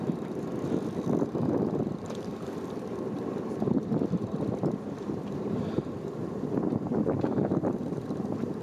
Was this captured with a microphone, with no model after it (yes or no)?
yes